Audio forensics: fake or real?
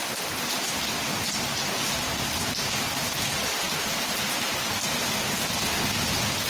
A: real